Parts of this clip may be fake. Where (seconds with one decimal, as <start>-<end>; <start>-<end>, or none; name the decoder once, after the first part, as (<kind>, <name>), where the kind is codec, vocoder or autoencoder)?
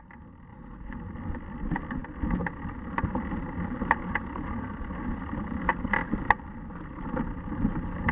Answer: 0.5-1.1 (vocoder, Vocos)